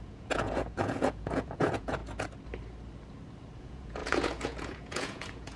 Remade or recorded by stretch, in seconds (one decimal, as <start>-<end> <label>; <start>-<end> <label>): 0.0-2.0 remade; 2.0-3.6 recorded; 3.6-5.6 remade